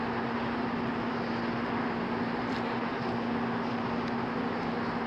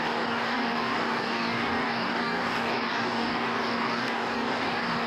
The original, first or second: first